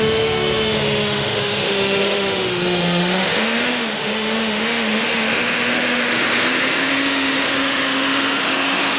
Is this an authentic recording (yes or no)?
no